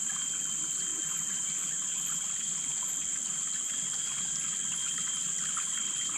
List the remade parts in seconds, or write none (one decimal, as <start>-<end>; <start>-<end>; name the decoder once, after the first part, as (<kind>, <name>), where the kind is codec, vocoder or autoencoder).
none